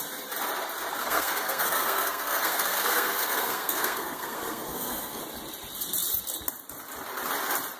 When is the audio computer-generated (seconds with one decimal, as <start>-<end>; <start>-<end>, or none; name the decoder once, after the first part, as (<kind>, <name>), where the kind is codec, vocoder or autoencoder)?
1.0-5.2 (codec, SNAC)